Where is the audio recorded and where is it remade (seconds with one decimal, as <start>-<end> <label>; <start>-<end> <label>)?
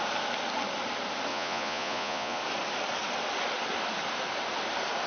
0.0-1.3 recorded; 1.3-2.4 remade; 2.4-5.1 recorded